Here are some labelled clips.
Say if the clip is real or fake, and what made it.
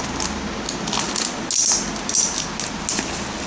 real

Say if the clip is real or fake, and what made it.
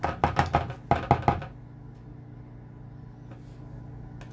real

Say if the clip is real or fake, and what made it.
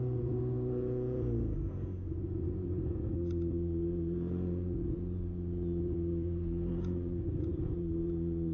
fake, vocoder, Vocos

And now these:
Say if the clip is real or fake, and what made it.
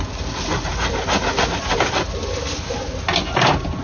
real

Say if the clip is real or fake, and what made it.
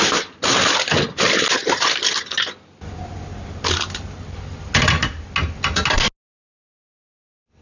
real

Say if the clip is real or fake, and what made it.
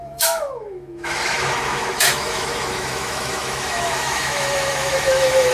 fake, autoencoder, DAC-VAE